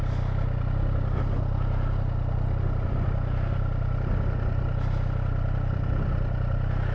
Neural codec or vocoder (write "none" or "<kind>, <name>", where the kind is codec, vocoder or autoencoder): none